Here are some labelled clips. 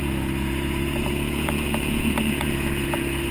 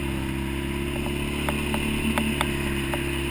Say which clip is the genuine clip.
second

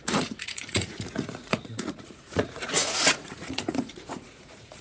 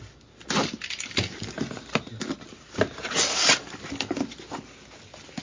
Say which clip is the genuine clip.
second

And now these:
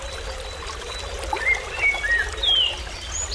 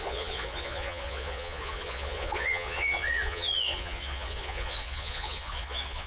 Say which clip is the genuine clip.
first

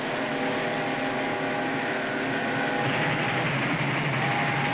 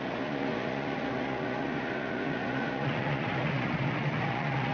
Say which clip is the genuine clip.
first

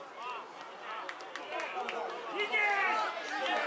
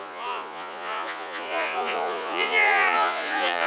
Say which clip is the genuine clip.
first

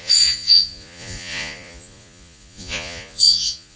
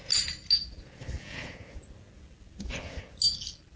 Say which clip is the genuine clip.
second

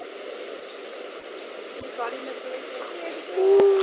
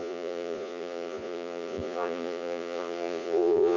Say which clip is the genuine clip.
first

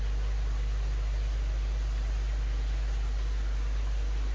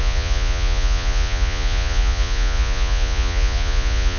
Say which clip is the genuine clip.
first